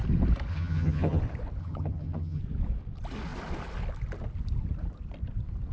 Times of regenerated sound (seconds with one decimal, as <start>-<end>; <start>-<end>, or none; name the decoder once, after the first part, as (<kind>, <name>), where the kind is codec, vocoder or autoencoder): 0.5-1.2 (vocoder, HiFi-GAN); 1.6-2.4